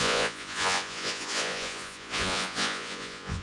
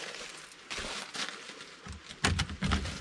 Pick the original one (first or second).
second